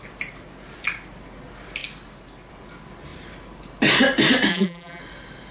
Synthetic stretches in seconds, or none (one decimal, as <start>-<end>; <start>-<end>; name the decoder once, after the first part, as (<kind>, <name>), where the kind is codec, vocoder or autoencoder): 4.5-5.0 (vocoder, BigVGAN v2)